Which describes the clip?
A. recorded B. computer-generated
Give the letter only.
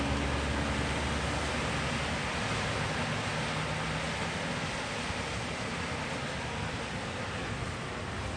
A